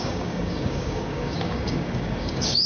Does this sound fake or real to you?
fake